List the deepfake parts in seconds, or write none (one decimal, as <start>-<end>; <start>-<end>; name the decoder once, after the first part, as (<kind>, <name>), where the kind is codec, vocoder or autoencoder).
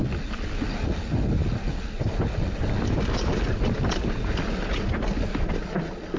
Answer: none